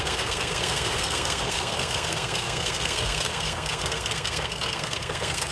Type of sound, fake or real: fake